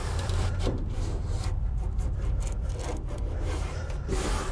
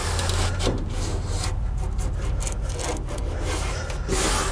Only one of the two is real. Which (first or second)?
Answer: second